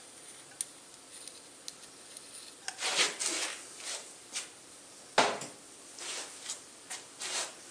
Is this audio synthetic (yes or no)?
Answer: no